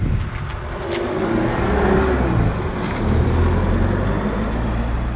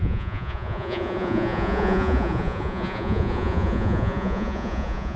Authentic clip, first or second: first